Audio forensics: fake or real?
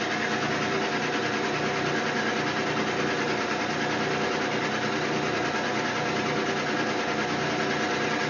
real